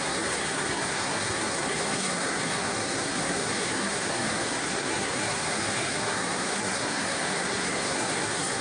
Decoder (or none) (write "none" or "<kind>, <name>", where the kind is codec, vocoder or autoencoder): codec, SNAC